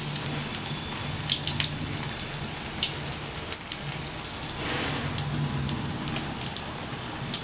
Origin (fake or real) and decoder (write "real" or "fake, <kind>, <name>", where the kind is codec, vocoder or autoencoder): real